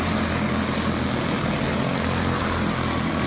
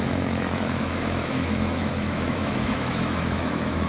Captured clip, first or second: first